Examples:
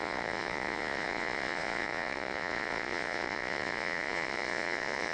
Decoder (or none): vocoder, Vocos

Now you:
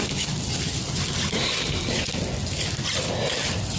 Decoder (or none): none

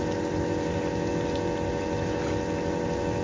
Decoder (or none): none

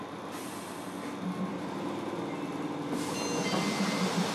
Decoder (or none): none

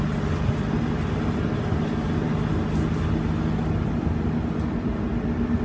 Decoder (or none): none